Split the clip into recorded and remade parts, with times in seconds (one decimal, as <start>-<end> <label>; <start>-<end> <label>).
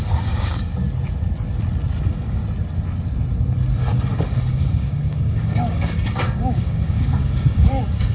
0.0-0.7 remade; 0.7-2.0 recorded; 2.0-2.4 remade; 2.4-4.5 recorded; 4.5-8.1 remade